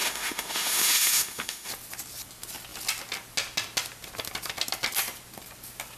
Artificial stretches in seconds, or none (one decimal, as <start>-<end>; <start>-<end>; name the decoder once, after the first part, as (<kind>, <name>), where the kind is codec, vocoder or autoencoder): 0.0-1.7 (autoencoder, DAC-VAE)